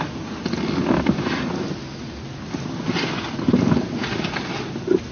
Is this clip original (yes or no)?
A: yes